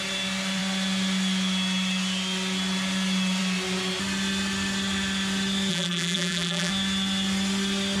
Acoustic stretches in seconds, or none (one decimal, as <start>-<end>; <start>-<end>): 0.0-5.7; 6.7-8.0